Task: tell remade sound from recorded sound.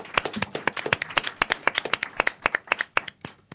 recorded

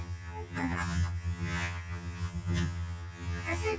remade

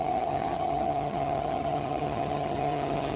remade